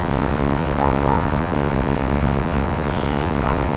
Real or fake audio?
fake